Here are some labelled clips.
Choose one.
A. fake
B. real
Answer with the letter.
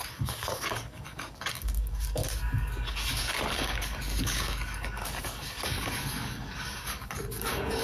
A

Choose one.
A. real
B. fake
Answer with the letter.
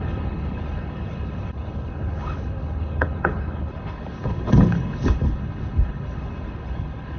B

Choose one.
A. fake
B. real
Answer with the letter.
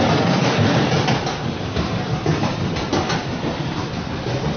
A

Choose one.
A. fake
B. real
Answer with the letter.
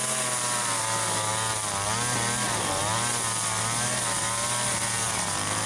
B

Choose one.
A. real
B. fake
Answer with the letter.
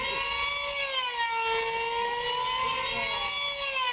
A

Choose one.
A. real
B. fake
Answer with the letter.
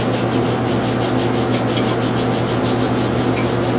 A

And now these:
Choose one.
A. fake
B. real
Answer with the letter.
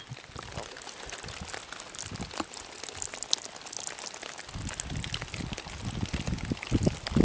B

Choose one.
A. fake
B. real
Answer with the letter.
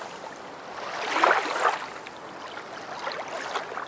B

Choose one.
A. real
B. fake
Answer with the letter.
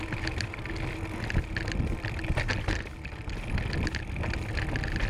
A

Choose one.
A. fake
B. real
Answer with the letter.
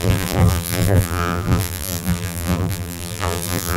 A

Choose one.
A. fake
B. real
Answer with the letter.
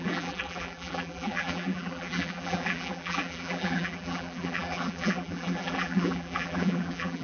A